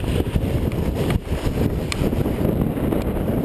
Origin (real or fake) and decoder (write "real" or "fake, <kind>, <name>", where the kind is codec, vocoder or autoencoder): fake, vocoder, BigVGAN v2